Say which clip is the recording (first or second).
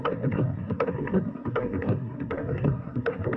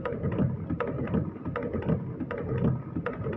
second